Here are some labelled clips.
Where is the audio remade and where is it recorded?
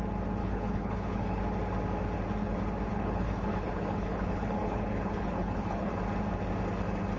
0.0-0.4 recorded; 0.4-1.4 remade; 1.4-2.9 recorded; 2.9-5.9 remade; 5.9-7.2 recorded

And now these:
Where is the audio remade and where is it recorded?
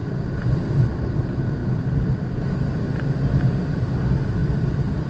0.0-1.2 remade; 1.2-1.6 recorded; 1.6-2.3 remade; 2.3-4.4 recorded; 4.4-5.1 remade